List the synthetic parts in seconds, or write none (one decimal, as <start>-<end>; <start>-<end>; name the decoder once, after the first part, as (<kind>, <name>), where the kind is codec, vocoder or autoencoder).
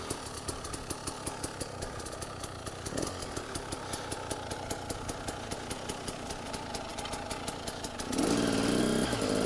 none